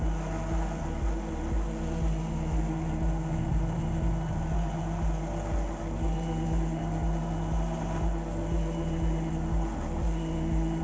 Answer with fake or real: real